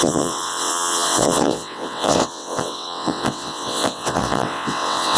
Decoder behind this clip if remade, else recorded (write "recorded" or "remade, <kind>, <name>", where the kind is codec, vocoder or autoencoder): remade, vocoder, WaveNeXt